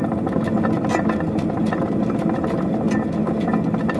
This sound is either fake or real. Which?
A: real